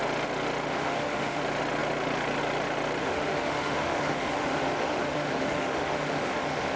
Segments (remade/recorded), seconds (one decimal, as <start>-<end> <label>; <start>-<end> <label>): 0.0-0.7 recorded; 0.7-1.4 remade; 1.4-3.0 recorded; 3.0-6.8 remade